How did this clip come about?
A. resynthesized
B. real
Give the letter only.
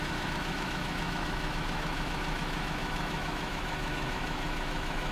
A